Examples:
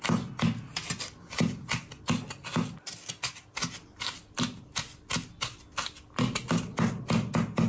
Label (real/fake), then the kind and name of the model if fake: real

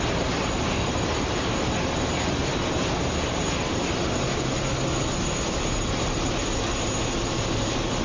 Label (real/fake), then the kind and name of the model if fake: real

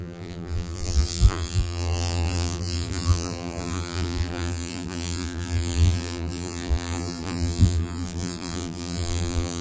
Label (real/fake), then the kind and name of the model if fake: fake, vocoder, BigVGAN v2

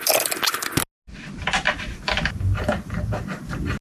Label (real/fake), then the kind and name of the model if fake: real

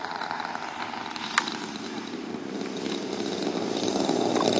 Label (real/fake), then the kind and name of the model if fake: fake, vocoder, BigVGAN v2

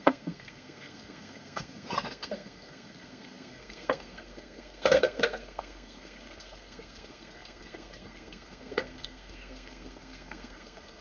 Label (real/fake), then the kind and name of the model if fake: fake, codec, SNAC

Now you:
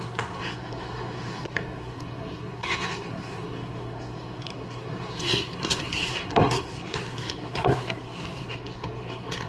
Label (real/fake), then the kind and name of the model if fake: fake, codec, SNAC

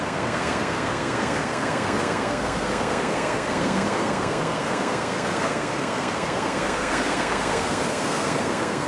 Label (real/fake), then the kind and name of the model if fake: fake, codec, SNAC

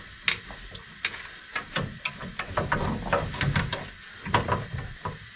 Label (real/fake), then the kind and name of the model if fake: real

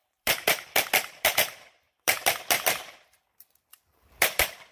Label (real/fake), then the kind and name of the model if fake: fake, vocoder, BigVGAN v2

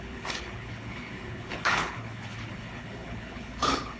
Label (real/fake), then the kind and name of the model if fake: fake, codec, HILCodec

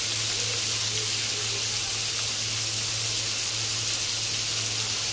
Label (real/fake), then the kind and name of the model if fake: real